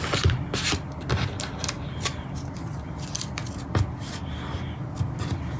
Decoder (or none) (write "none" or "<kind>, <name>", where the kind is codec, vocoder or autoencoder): none